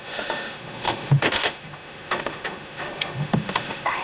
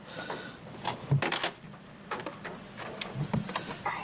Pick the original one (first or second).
second